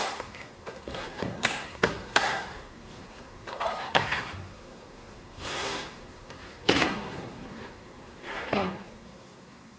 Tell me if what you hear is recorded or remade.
remade